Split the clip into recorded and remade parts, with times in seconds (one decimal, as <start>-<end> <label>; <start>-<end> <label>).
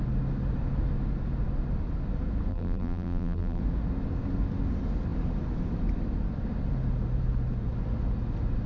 0.0-2.5 recorded; 2.5-3.6 remade; 3.6-8.7 recorded